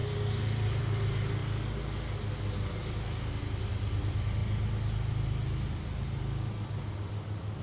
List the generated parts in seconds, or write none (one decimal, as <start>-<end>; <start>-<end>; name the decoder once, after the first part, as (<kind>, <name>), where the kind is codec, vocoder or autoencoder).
none

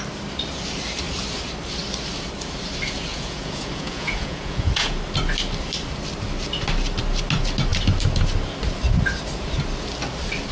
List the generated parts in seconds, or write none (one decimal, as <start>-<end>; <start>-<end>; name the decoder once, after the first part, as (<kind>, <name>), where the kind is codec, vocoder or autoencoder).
3.1-5.0 (vocoder, Vocos)

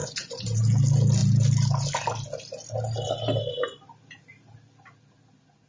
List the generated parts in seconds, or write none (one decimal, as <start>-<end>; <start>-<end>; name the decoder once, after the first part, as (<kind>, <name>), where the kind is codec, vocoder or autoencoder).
0.0-0.6 (vocoder, BigVGAN v2)

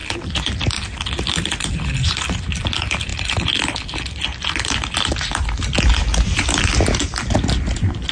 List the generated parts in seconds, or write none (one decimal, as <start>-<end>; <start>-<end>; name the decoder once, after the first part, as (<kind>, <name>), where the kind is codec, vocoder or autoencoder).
none

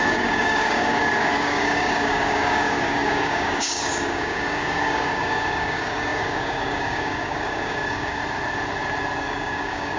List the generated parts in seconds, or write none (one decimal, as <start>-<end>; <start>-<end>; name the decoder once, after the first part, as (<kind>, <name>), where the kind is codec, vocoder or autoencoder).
0.0-8.2 (codec, DAC); 9.2-10.0

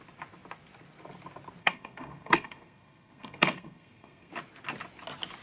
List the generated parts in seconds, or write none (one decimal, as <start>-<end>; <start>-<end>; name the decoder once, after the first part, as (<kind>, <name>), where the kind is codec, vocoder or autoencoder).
1.6-4.3 (codec, SNAC)

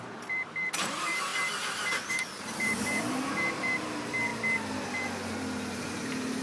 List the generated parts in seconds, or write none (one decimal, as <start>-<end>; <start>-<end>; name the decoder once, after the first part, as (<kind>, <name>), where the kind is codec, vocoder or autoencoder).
0.0-1.3 (vocoder, BigVGAN v2); 1.9-4.3; 5.8-6.4